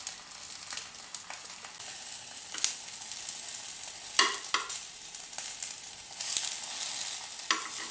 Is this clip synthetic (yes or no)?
no